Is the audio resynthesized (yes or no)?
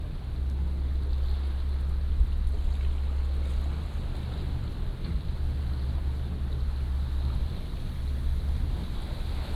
no